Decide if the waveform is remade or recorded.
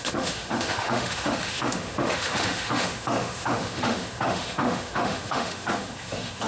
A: remade